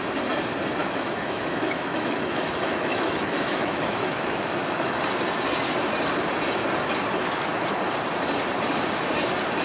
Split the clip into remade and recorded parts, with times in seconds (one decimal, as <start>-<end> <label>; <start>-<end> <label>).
0.0-0.8 recorded; 0.8-5.0 remade; 5.0-9.6 recorded